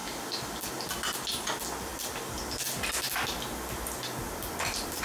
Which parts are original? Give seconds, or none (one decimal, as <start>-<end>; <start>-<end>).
0.0-5.0